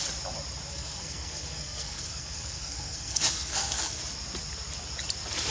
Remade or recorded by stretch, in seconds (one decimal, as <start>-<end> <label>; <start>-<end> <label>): 0.0-0.7 recorded; 0.7-4.0 remade; 4.0-5.5 recorded